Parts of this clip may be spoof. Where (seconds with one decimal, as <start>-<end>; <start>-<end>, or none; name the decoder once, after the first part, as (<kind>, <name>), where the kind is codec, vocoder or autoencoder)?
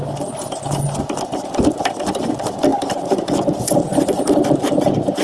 none